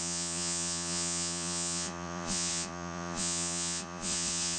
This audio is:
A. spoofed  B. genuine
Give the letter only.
A